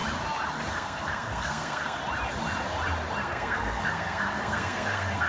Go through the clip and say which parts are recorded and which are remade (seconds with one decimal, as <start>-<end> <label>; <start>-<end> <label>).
0.0-0.7 recorded; 0.7-2.0 remade; 2.0-3.2 recorded; 3.2-5.3 remade